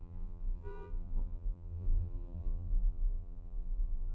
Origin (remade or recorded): remade